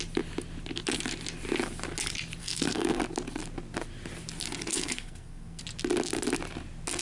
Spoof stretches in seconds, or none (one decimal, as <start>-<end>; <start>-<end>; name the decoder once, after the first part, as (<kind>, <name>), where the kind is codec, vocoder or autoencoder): 2.4-3.0 (codec, SNAC); 4.7-5.6